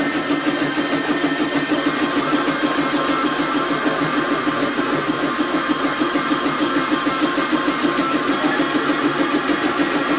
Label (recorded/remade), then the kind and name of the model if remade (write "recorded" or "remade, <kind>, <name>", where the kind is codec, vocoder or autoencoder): recorded